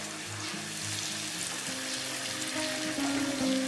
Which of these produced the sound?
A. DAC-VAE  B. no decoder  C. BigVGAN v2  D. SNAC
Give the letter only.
B